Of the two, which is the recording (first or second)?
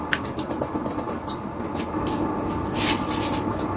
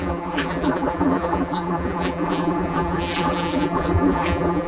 first